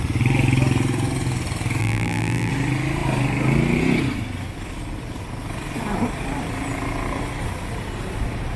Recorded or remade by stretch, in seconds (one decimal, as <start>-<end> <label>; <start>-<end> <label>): 0.0-1.8 recorded; 1.8-2.5 remade; 2.5-8.6 recorded